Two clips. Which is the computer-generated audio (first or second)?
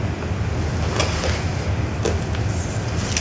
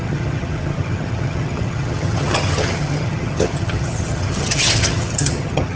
second